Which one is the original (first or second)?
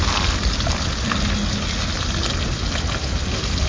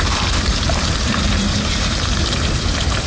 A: first